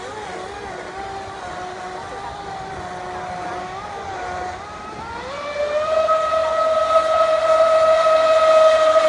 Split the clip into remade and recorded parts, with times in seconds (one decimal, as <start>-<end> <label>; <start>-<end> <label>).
0.0-9.1 recorded